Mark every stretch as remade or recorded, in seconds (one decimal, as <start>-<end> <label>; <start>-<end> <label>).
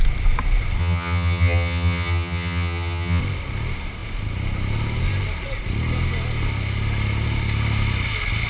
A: 0.0-0.8 recorded; 0.8-3.2 remade; 3.2-8.5 recorded